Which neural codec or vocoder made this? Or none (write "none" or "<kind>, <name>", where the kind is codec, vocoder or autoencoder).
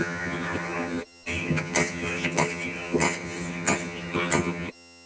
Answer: vocoder, HiFi-GAN